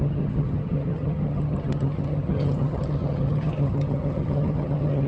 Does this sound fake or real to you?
fake